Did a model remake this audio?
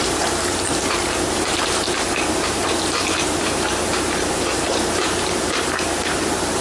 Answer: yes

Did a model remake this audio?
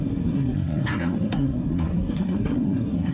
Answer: yes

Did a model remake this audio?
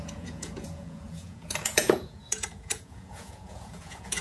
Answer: yes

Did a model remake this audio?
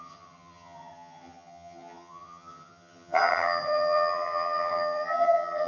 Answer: yes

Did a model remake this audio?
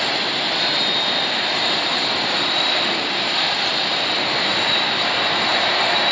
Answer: yes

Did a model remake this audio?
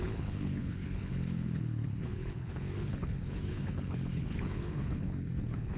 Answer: yes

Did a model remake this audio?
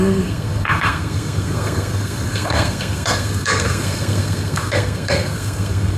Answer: yes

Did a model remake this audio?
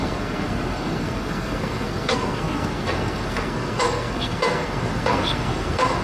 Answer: yes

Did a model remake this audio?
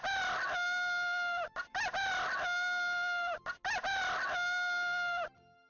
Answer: no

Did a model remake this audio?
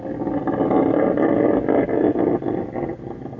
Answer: no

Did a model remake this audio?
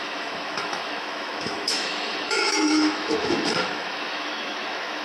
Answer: yes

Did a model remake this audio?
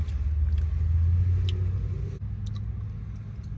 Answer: no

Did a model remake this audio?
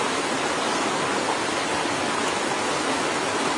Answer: no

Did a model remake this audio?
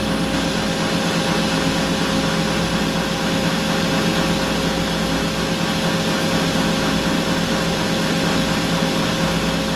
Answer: no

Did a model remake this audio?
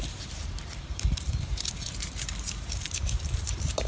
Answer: yes